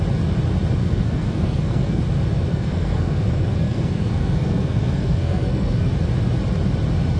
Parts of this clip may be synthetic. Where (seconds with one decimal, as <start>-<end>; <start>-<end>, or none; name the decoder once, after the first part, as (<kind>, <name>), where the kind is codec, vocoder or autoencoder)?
0.8-2.0 (codec, SNAC); 2.5-5.9